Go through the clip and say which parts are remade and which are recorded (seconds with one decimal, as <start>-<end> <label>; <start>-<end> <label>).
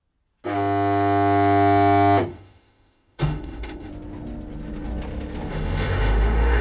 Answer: 0.0-2.3 recorded; 2.3-3.9 remade; 3.9-5.5 recorded; 5.5-6.6 remade